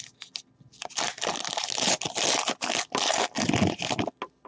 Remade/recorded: recorded